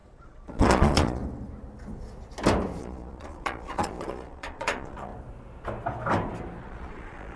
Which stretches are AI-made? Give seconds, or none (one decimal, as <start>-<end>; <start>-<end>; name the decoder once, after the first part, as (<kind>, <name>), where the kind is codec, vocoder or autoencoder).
0.0-1.2 (vocoder, Vocos); 2.8-5.1; 6.6-7.4

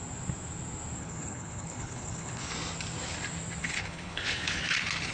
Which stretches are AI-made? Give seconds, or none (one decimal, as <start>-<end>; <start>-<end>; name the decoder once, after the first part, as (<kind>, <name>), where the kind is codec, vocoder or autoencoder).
1.0-2.5 (codec, HILCodec); 3.6-4.6

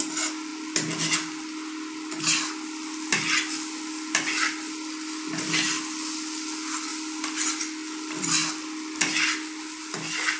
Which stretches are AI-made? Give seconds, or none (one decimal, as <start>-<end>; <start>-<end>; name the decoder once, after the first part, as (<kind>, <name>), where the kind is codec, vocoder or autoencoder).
none

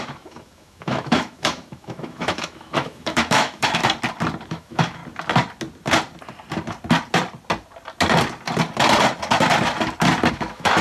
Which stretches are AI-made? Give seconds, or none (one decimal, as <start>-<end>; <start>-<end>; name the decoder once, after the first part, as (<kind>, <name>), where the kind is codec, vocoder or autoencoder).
0.0-3.8 (autoencoder, DAC-VAE); 4.5-5.0; 10.3-10.8

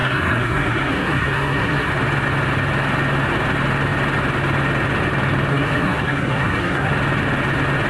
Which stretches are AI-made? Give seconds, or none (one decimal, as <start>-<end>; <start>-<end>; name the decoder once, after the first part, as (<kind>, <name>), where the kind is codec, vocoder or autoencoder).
0.0-1.9 (codec, SNAC); 5.5-6.9

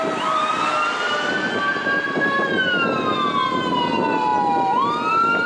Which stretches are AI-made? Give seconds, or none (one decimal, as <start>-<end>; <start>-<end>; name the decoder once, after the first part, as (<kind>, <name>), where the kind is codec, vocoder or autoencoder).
none